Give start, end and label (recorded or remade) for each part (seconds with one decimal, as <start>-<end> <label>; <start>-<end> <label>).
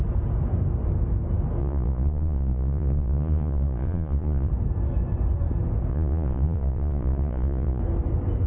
0.0-1.6 recorded; 1.6-4.5 remade; 4.5-5.9 recorded; 5.9-7.8 remade; 7.8-8.5 recorded